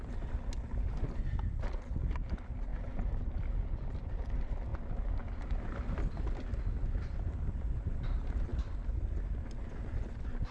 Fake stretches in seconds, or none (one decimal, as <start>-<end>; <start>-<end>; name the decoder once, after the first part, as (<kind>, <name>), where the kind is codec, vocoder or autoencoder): none